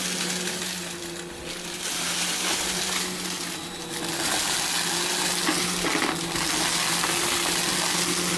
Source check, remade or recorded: recorded